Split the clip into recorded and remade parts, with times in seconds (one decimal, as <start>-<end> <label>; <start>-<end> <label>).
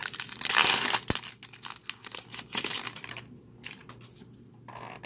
0.0-5.1 recorded